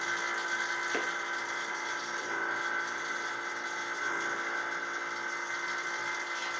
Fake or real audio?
real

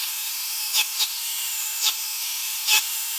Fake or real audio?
fake